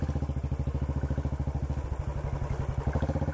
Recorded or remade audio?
recorded